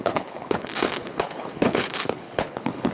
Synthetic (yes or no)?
yes